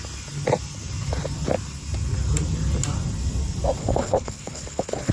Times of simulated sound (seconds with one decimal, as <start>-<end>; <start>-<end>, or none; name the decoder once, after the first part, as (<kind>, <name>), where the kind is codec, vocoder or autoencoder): 3.8-5.1 (codec, HILCodec)